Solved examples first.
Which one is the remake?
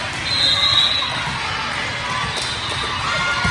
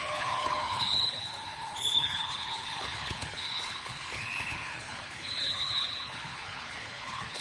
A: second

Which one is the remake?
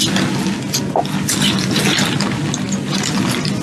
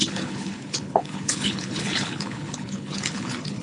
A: second